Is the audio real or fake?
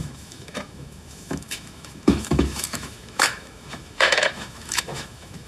fake